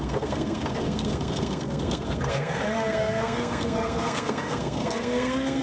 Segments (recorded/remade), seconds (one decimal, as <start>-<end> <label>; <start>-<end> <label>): 0.0-5.6 remade